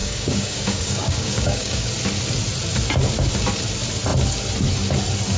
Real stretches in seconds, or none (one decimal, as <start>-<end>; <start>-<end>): 1.9-5.4